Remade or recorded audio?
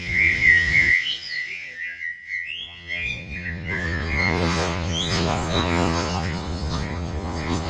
remade